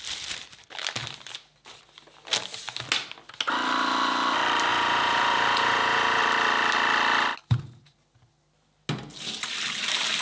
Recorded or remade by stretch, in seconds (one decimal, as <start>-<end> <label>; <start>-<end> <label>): 0.0-4.7 recorded; 4.7-6.2 remade; 6.2-10.2 recorded